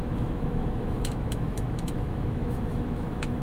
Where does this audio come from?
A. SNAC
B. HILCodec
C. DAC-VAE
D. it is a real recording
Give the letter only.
C